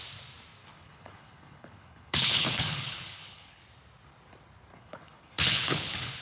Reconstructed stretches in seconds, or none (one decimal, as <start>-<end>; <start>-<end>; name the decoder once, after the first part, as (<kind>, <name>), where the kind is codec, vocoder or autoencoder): 0.6-3.6 (codec, HILCodec); 4.7-6.2